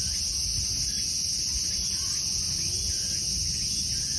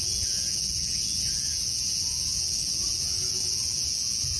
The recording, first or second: first